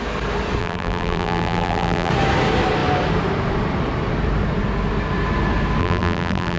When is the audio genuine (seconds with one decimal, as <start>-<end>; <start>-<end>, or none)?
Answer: 0.0-0.6; 2.1-5.8